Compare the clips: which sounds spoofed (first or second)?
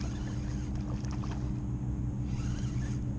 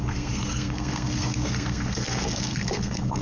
second